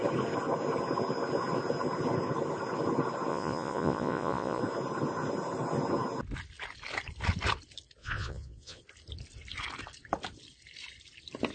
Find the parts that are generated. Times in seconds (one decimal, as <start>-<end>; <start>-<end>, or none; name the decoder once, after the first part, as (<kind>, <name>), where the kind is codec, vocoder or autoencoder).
3.3-4.6 (vocoder, Vocos); 8.0-8.8